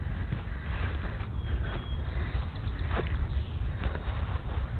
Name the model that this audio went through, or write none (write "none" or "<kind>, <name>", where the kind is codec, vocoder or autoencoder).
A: none